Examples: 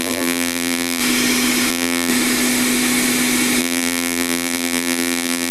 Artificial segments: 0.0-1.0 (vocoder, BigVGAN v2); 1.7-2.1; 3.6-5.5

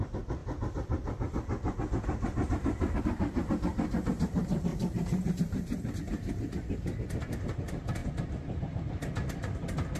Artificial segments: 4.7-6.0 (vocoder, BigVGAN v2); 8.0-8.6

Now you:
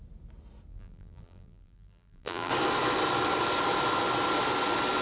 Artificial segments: 0.7-2.5 (vocoder, BigVGAN v2)

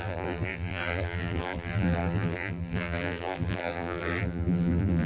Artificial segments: 0.0-5.1 (vocoder, BigVGAN v2)